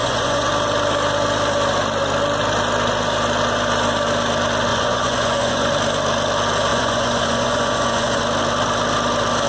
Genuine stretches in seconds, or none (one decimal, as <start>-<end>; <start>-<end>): 0.5-4.7; 5.7-6.7; 8.2-9.5